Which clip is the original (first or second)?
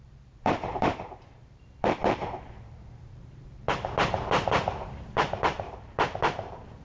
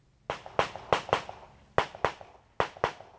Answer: second